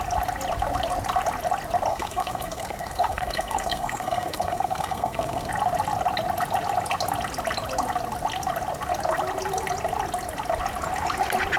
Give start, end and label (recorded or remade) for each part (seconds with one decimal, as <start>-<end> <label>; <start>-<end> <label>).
0.0-1.9 recorded; 1.9-5.5 remade; 5.5-11.6 recorded